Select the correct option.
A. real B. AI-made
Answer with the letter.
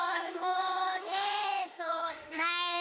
B